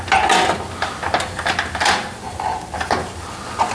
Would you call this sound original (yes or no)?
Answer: yes